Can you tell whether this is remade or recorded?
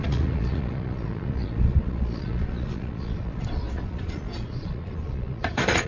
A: remade